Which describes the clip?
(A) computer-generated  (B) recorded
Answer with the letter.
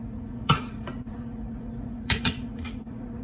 A